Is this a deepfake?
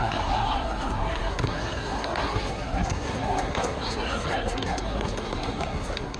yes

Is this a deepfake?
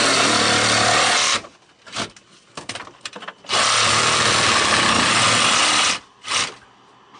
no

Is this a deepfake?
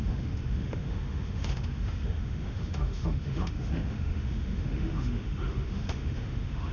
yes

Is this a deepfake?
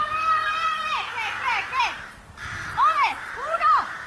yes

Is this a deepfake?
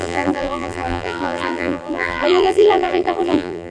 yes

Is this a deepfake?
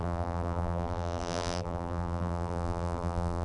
yes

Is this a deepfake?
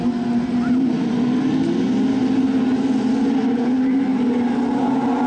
no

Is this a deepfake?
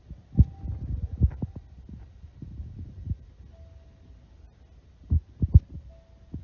no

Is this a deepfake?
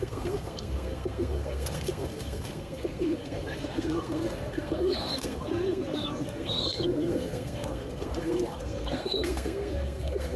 yes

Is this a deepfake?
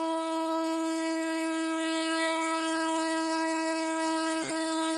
yes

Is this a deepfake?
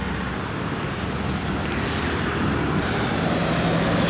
no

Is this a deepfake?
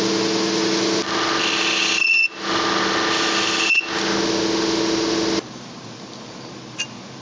no